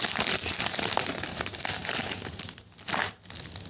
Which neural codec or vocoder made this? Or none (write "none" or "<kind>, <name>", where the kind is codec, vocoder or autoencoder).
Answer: none